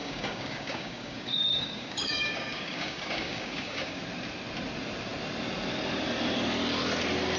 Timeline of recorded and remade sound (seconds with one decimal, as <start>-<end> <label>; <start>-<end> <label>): 0.0-4.0 remade; 4.0-7.4 recorded